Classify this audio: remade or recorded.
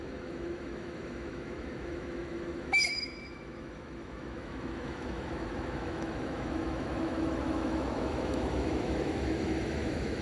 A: remade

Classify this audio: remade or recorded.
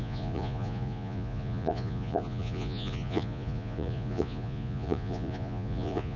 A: remade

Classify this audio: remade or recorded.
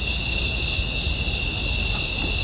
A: recorded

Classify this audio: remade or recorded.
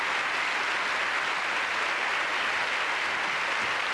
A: recorded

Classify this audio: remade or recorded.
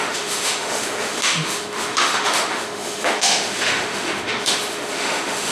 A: remade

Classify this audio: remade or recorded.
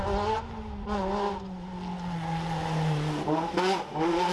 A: recorded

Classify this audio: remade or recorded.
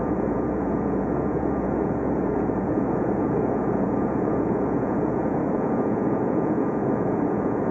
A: remade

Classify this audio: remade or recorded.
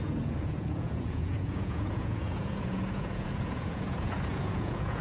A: remade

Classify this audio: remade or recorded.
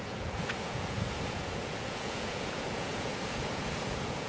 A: remade